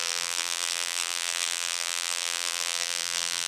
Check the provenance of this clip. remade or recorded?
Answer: remade